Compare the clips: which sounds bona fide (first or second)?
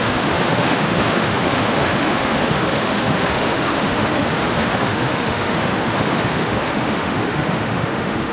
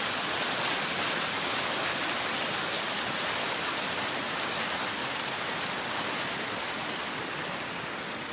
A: second